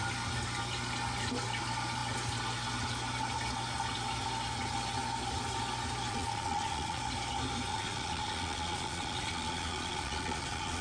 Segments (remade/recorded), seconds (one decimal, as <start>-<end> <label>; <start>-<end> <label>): 0.0-6.1 recorded; 6.1-7.0 remade; 7.0-7.7 recorded; 7.7-10.8 remade

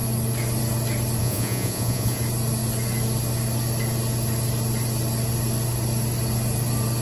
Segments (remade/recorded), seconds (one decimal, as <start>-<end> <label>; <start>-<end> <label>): 0.0-1.2 recorded; 1.2-2.2 remade; 2.2-7.0 recorded

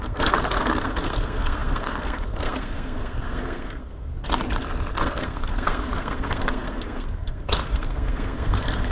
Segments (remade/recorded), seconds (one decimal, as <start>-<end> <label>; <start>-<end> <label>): 0.0-4.1 remade; 4.1-5.0 recorded; 5.0-8.9 remade